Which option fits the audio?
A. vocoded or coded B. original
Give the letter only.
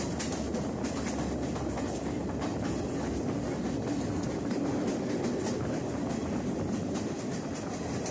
B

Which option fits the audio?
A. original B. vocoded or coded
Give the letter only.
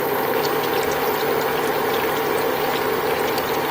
A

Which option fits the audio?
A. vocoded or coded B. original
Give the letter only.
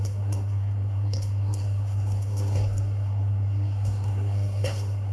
A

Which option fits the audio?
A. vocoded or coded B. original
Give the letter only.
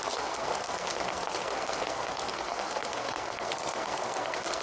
A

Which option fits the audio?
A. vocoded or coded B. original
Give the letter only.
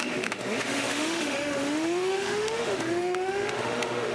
A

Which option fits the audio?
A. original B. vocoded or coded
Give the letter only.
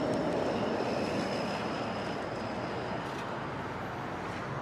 A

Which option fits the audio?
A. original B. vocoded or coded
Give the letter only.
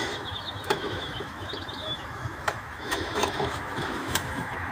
B